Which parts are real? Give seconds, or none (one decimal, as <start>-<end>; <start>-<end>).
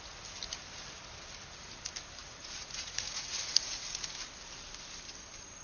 0.0-2.2; 4.0-5.6